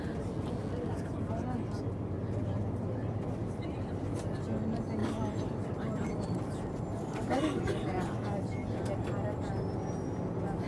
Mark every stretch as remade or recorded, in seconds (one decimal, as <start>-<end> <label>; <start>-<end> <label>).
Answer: 0.0-3.4 recorded; 3.4-3.9 remade; 3.9-5.0 recorded; 5.0-7.4 remade; 7.4-10.7 recorded